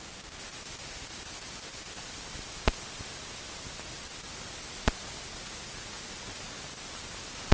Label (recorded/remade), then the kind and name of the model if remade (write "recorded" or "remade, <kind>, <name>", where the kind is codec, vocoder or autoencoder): recorded